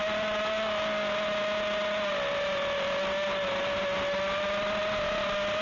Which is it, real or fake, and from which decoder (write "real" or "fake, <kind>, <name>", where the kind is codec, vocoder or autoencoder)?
real